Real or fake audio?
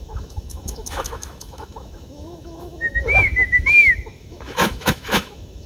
fake